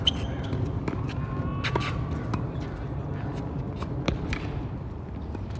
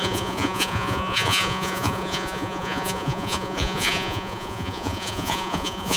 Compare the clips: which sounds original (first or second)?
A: first